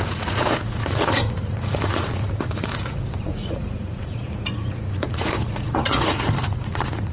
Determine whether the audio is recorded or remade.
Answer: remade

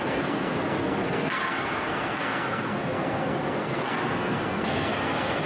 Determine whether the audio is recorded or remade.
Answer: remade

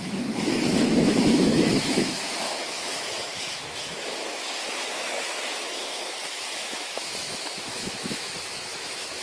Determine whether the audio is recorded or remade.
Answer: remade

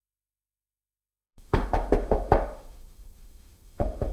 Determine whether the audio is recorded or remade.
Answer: remade